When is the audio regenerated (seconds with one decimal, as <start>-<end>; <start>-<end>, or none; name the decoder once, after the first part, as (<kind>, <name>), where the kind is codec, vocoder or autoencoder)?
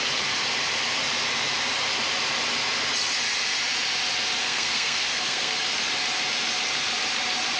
4.4-5.5 (codec, SNAC)